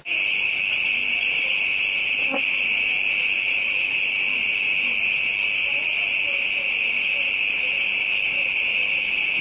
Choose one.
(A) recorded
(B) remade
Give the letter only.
A